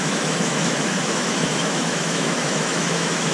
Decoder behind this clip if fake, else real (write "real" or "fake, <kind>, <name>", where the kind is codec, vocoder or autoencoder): fake, autoencoder, DAC-VAE